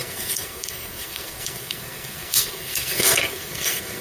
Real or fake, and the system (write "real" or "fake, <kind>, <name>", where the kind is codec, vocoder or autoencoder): fake, codec, SNAC